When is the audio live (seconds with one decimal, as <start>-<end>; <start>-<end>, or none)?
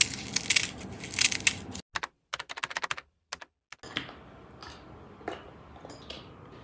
0.0-6.6